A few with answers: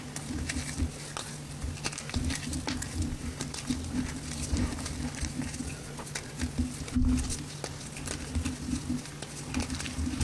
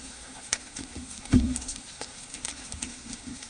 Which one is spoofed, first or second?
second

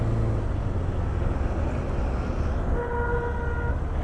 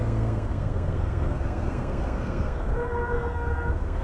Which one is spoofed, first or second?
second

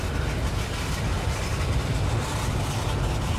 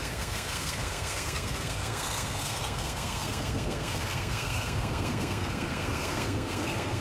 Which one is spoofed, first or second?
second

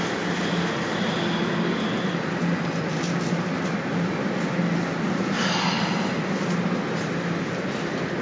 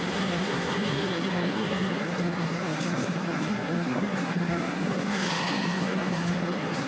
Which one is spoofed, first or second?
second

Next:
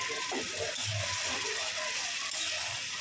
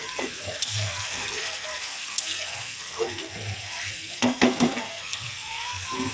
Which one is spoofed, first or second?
second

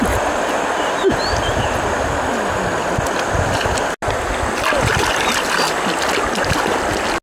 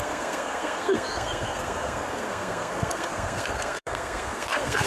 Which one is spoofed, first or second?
second